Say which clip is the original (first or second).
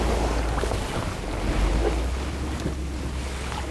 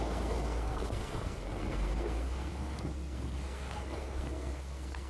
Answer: first